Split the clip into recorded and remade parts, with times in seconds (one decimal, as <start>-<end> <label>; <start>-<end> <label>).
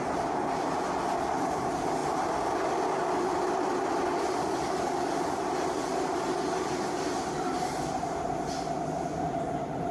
0.0-9.9 recorded